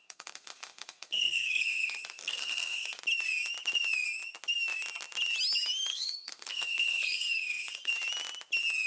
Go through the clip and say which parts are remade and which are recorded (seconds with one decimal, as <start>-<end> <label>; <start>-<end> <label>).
0.0-3.0 remade; 3.0-5.9 recorded; 5.9-7.9 remade; 7.9-8.9 recorded